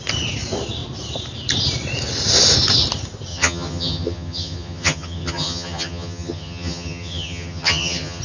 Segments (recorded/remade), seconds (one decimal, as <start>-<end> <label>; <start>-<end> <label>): 0.0-3.3 recorded; 3.3-8.2 remade